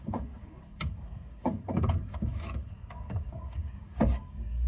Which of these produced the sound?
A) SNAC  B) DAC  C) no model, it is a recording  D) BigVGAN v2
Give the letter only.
B